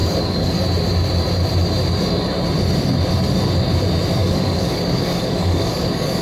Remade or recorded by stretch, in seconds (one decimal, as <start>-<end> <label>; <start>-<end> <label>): 0.0-0.6 remade; 0.6-4.2 recorded; 4.2-6.2 remade